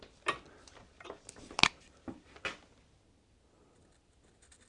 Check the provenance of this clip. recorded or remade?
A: recorded